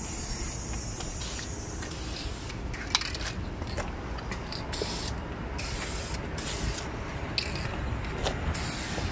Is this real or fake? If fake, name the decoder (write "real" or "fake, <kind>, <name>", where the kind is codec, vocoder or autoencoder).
real